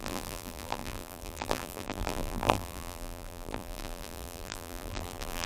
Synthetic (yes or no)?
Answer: yes